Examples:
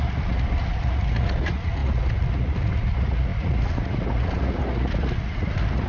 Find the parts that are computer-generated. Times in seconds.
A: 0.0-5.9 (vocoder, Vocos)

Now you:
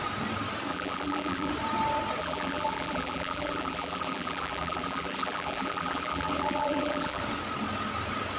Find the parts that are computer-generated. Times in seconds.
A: 0.7-1.5 (vocoder, BigVGAN v2); 2.2-7.2

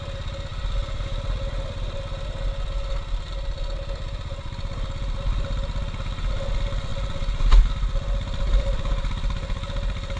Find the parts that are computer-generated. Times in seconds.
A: none

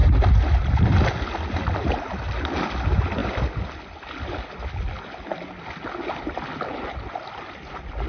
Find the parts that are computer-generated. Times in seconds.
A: none

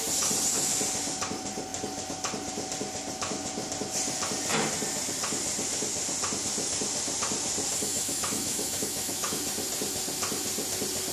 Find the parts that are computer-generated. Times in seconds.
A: 7.8-9.5 (autoencoder, DAC-VAE)

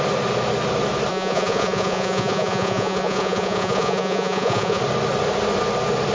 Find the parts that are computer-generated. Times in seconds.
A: 1.1-4.8 (vocoder, Vocos)